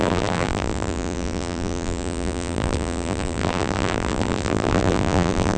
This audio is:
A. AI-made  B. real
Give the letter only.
A